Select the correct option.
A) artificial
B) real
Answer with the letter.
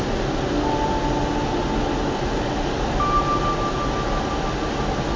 B